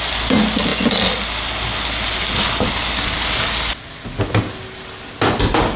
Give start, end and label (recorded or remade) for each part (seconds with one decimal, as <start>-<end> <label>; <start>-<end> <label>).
0.0-5.8 recorded